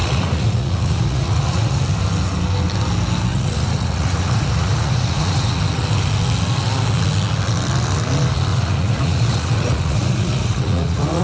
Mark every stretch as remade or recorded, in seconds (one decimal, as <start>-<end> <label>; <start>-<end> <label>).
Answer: 0.0-1.8 remade; 1.8-3.3 recorded; 3.3-5.6 remade; 5.6-8.5 recorded; 8.5-11.2 remade